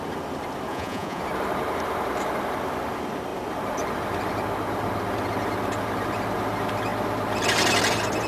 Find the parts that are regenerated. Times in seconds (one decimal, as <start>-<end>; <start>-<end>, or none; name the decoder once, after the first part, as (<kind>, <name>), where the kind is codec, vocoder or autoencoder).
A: 0.7-1.2 (vocoder, Vocos)